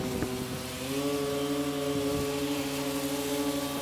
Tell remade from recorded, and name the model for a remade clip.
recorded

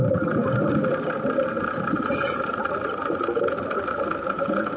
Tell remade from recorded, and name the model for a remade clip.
recorded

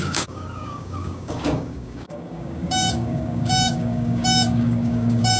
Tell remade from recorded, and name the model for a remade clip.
remade, codec, DAC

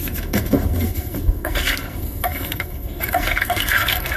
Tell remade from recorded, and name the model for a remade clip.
remade, codec, SNAC